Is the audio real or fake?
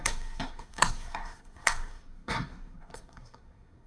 fake